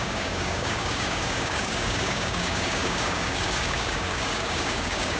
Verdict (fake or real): fake